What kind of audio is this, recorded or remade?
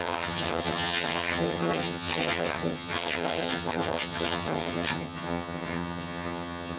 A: remade